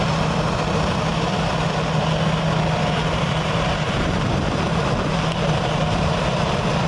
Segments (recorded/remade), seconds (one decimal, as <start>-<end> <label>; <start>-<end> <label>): 0.0-3.0 recorded; 3.0-6.9 remade